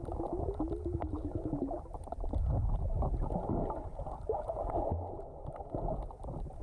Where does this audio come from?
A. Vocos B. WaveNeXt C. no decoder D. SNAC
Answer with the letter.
C